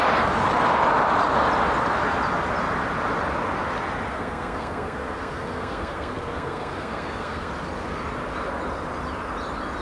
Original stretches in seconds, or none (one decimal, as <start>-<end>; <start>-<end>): 0.0-4.1; 7.5-9.8